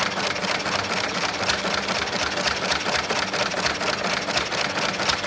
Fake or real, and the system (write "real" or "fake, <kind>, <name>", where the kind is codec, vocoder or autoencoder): real